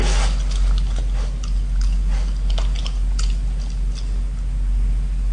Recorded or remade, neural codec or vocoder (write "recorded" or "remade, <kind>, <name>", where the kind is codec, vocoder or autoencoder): recorded